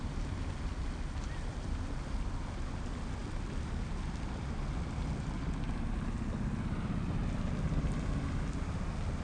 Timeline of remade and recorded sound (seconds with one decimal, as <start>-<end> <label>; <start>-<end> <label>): 0.0-9.2 recorded